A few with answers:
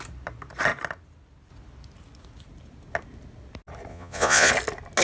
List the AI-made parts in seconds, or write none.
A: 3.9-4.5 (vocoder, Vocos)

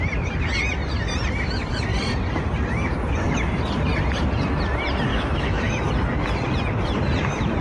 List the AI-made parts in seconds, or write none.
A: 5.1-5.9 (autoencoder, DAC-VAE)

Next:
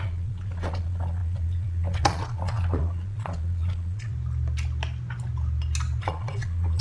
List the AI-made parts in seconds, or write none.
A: 0.0-4.1 (vocoder, Vocos); 6.0-6.8